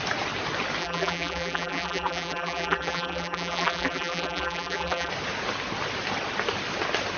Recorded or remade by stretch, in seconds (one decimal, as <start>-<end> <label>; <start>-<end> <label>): 0.0-0.8 recorded; 0.8-5.1 remade; 5.1-7.2 recorded